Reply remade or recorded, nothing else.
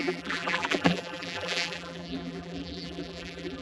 remade